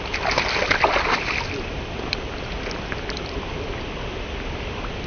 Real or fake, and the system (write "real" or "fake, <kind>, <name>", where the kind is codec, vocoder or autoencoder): real